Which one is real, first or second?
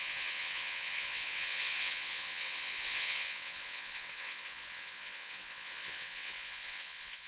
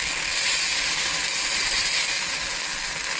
second